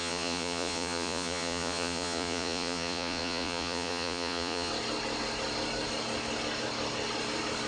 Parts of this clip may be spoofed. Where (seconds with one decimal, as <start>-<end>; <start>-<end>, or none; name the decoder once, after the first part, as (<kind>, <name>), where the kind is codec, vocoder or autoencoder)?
0.0-4.7 (vocoder, Vocos)